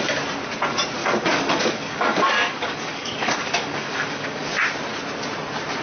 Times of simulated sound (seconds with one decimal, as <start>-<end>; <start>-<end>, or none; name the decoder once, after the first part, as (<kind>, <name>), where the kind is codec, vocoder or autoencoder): 1.0-4.5 (codec, DAC)